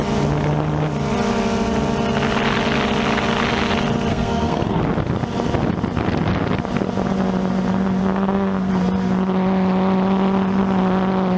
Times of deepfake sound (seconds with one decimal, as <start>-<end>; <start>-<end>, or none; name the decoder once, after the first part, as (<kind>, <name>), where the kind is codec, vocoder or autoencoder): 4.1-4.8 (codec, SNAC); 8.0-8.7